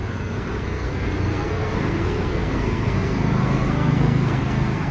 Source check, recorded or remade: remade